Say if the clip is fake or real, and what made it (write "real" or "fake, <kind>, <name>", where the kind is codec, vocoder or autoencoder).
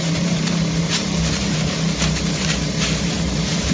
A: fake, vocoder, BigVGAN v2